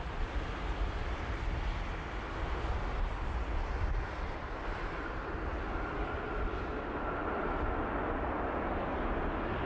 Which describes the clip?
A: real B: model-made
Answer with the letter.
A